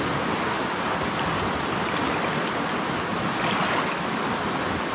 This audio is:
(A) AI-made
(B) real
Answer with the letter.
B